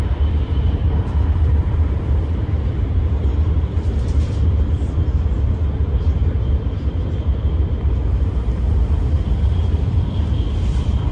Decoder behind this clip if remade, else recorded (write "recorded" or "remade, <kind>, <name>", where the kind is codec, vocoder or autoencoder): remade, vocoder, BigVGAN v2